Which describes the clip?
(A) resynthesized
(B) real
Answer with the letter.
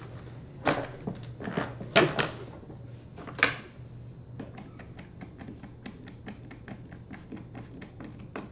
B